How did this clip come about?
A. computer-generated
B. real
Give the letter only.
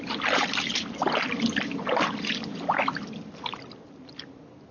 B